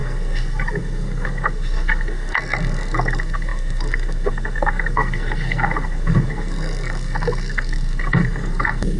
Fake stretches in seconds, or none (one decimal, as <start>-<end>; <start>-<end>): 0.0-9.0